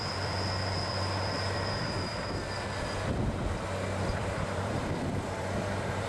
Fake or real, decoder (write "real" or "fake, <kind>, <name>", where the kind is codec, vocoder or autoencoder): fake, vocoder, BigVGAN v2